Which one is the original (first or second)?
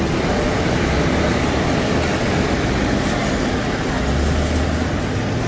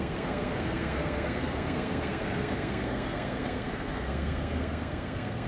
first